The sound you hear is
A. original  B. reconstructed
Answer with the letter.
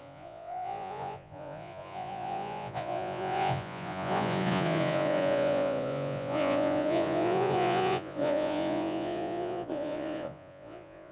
B